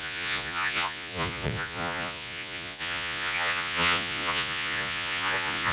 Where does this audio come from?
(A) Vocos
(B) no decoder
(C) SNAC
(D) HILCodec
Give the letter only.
A